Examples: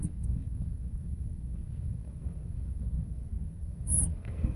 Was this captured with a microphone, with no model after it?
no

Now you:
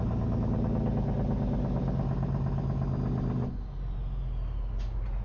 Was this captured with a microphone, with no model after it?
yes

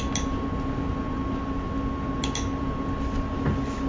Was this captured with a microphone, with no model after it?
yes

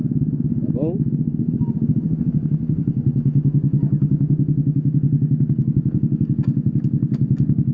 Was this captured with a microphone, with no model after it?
no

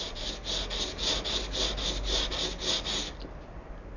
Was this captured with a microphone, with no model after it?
yes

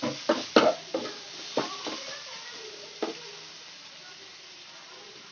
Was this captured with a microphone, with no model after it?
yes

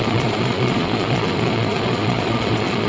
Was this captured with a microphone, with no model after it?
no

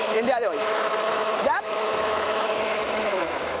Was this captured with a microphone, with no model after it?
no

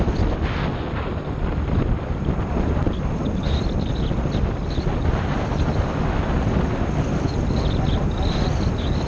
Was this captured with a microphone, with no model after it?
yes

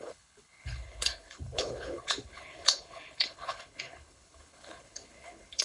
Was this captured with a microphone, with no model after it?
no